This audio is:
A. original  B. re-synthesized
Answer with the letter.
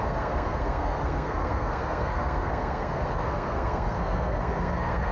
B